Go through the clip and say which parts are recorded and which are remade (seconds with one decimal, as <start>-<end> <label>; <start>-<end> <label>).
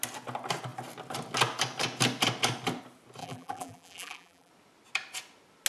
0.0-3.2 recorded; 3.2-4.5 remade; 4.5-5.7 recorded